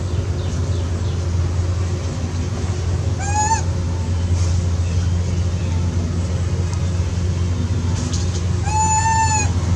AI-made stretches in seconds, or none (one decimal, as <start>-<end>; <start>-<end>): none